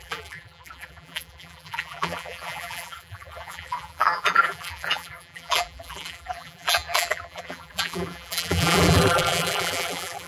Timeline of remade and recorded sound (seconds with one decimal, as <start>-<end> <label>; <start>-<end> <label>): 0.0-10.3 remade